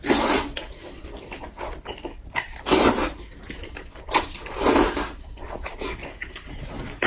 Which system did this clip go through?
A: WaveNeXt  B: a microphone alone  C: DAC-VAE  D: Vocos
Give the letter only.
B